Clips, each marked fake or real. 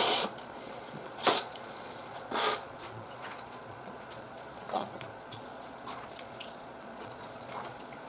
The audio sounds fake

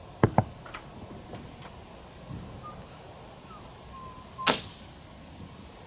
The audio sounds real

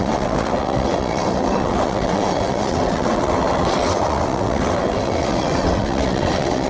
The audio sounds fake